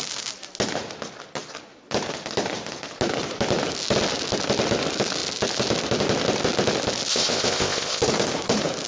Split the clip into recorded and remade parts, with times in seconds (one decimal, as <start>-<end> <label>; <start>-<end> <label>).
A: 0.0-7.1 recorded; 7.1-8.0 remade; 8.0-8.9 recorded